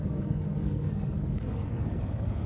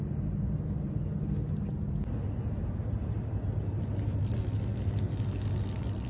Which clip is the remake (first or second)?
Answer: first